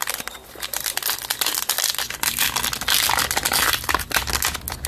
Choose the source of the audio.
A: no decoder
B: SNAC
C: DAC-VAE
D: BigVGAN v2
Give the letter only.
A